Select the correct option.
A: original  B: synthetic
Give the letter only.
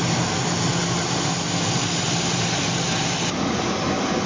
A